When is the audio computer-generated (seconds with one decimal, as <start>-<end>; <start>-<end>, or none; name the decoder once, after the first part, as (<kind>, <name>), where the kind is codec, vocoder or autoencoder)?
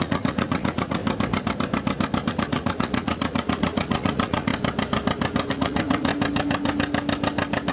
0.0-1.0 (vocoder, Vocos); 2.3-4.5; 5.5-6.1